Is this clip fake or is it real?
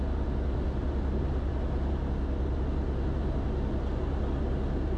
real